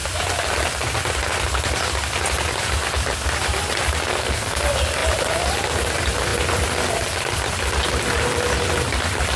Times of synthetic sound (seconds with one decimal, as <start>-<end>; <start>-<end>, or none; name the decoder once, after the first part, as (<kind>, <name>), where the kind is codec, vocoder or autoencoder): 4.1-4.6 (codec, SNAC)